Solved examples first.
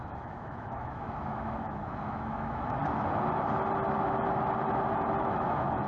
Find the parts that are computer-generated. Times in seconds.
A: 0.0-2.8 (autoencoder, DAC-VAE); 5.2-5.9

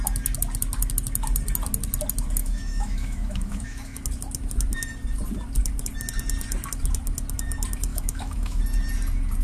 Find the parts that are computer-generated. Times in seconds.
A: 2.4-4.0 (autoencoder, DAC-VAE); 7.9-8.6

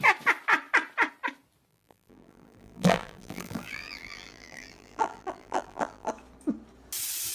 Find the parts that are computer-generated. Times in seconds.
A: 1.7-6.1 (vocoder, BigVGAN v2)